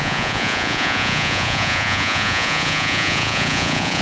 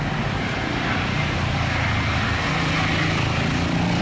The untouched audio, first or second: second